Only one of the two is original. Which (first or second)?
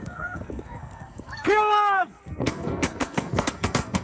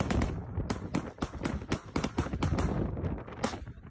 second